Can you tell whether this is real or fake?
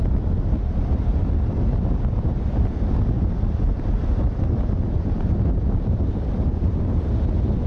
real